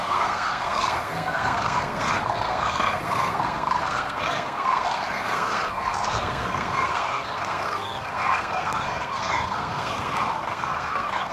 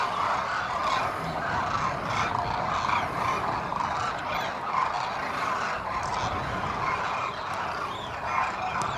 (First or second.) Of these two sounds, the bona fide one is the second